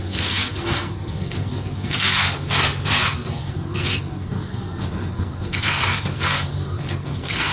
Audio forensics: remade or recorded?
remade